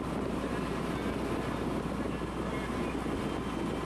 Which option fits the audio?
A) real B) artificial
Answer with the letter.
A